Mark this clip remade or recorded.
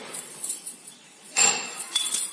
remade